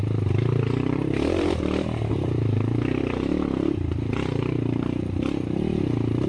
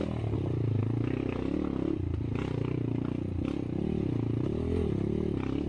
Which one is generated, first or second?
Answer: first